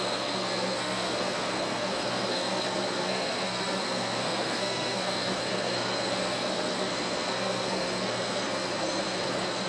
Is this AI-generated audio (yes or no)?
yes